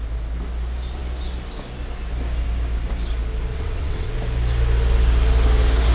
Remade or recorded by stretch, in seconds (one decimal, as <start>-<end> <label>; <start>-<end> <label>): 0.0-3.5 recorded; 3.5-4.1 remade; 4.1-5.9 recorded